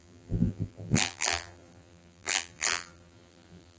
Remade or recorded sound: remade